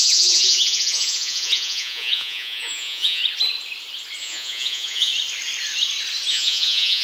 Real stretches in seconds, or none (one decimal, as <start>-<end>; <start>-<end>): 3.2-4.2; 5.1-6.3